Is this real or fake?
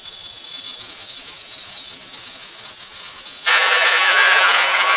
fake